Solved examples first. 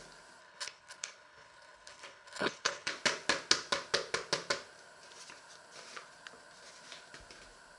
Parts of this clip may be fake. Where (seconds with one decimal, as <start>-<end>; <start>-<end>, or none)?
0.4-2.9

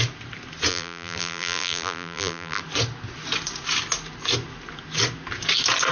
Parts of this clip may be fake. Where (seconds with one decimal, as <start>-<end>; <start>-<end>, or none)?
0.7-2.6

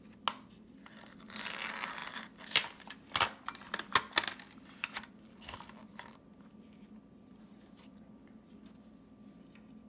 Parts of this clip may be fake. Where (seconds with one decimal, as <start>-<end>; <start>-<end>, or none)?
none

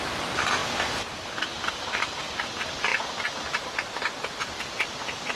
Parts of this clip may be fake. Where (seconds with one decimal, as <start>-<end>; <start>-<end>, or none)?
none

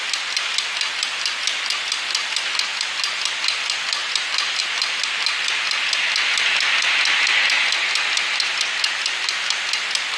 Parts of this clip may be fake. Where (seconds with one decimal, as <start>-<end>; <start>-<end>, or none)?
4.0-4.6; 7.6-8.6

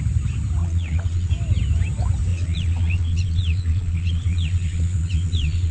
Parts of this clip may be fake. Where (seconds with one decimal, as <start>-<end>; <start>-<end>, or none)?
0.6-1.3; 2.3-5.7